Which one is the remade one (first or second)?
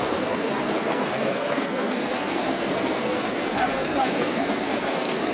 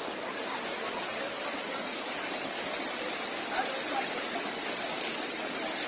first